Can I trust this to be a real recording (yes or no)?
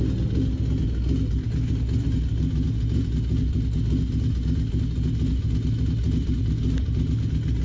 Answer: yes